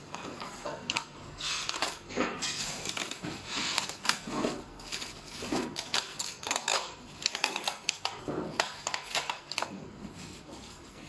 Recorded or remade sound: remade